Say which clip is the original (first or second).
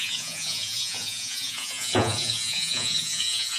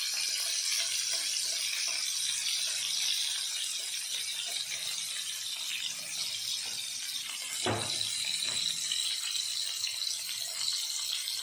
second